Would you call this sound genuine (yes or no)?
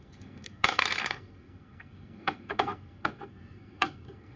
no